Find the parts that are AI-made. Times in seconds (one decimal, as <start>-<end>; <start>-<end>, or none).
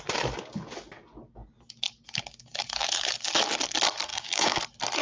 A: 4.1-4.6